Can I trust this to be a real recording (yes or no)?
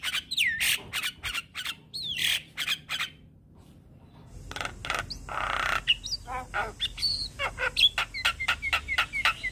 yes